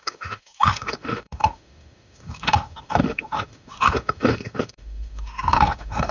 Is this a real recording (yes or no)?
no